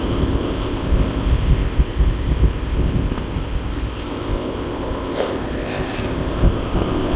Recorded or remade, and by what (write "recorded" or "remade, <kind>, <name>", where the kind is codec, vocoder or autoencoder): remade, codec, ZipCodec